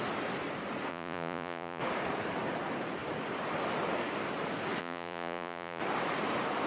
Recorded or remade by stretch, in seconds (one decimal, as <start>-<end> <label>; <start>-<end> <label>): 0.0-0.9 recorded; 0.9-1.8 remade; 1.8-4.8 recorded; 4.8-5.8 remade; 5.8-6.7 recorded